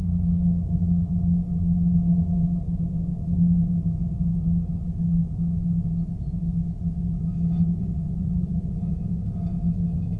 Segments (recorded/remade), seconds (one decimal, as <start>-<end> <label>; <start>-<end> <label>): 0.0-7.8 recorded; 7.8-9.0 remade; 9.0-10.2 recorded